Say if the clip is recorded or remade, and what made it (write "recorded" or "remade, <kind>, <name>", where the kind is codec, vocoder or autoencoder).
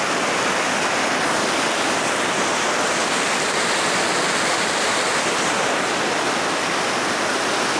recorded